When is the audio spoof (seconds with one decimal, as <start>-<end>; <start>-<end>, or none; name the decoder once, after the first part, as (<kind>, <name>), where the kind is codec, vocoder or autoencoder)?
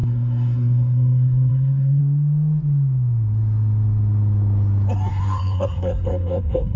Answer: 0.0-2.0 (codec, SNAC); 5.1-6.8